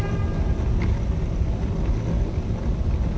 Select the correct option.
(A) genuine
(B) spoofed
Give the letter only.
A